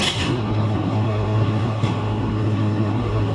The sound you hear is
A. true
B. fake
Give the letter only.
B